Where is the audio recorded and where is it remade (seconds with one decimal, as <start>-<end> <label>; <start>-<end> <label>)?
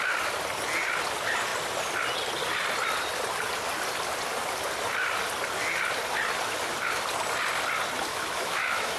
0.0-8.1 recorded; 8.1-9.0 remade